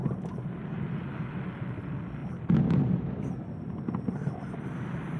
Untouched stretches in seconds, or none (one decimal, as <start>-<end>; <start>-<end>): 0.6-2.2; 3.3-5.2